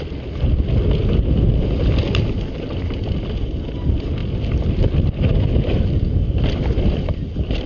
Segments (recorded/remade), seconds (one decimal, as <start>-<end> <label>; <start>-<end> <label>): 0.0-7.7 recorded